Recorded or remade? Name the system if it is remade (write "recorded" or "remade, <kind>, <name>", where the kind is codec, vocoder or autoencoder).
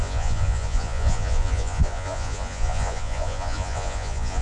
remade, vocoder, Vocos